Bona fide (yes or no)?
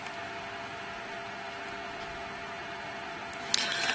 yes